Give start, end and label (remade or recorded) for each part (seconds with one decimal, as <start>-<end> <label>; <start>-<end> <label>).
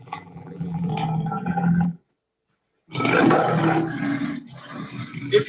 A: 0.0-0.9 remade; 0.9-1.4 recorded; 1.4-2.0 remade; 2.0-5.5 recorded